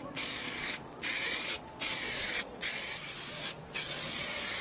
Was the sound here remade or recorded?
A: remade